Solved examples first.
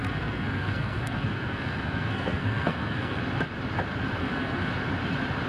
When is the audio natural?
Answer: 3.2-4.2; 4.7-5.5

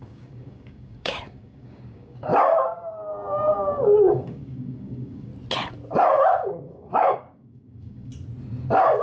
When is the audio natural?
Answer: 2.3-3.3; 5.3-6.5; 8.1-9.0

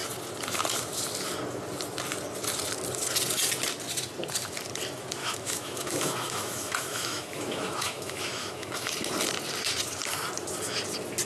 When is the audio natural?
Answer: 0.0-5.2; 8.9-11.3

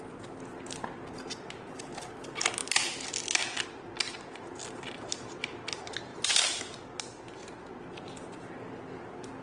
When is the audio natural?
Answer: 0.0-6.1; 6.6-9.4

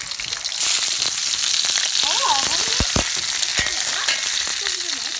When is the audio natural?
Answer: 0.0-5.2